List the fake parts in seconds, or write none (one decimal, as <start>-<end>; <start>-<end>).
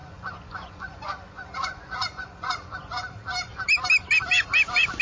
0.0-3.0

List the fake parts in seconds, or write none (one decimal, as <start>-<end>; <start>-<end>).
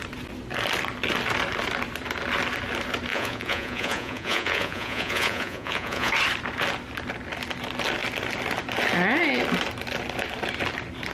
3.1-6.1